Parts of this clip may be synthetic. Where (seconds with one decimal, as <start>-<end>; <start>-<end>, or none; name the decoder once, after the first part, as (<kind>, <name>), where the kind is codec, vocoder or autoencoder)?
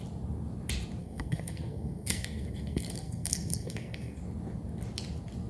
1.0-4.2 (codec, SNAC)